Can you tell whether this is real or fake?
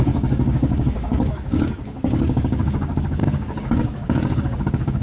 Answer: fake